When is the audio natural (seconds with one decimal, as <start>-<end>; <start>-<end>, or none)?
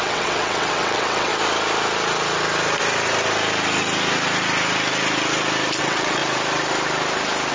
1.3-5.8; 6.2-7.5